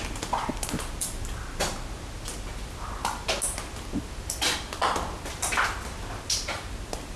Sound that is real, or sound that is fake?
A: real